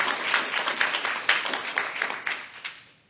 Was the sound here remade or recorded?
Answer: recorded